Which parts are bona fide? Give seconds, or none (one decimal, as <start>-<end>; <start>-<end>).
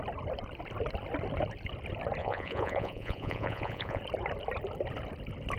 0.0-2.2; 4.0-5.6